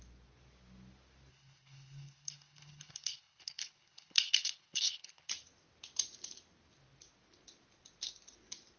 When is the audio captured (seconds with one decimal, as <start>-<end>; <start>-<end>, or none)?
0.0-1.3; 5.3-8.8